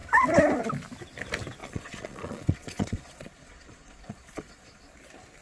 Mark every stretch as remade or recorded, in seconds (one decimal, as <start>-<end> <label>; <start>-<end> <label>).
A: 0.0-1.6 recorded; 1.6-4.8 remade; 4.8-5.4 recorded